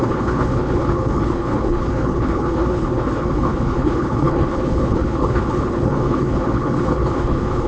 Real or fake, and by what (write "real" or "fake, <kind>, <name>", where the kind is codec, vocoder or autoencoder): fake, codec, HILCodec